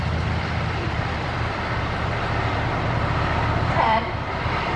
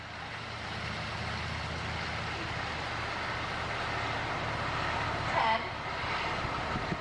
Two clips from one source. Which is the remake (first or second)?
first